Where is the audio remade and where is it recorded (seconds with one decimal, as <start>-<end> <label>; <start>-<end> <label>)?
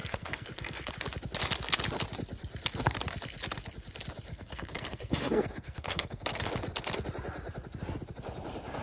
0.0-0.9 remade; 0.9-4.3 recorded; 4.3-6.5 remade; 6.5-8.8 recorded